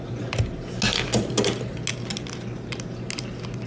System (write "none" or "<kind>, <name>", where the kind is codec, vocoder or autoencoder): none